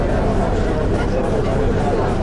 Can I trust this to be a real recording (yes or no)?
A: yes